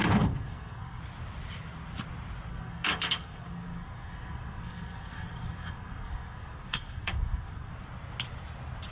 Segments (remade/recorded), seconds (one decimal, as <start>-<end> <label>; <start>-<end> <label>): 0.0-1.0 remade; 1.0-2.5 recorded; 2.5-7.7 remade; 7.7-8.9 recorded